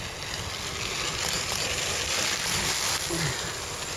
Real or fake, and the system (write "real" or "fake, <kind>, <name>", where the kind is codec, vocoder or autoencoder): real